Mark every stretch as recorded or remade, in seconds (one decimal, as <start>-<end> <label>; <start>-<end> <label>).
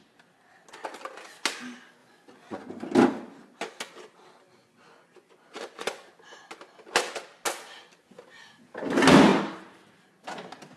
0.0-2.0 recorded; 2.0-2.7 remade; 2.7-4.6 recorded; 4.6-6.0 remade; 6.0-10.8 recorded